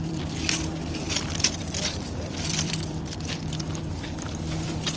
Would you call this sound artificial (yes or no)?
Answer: yes